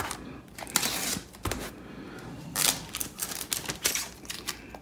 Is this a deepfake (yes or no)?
yes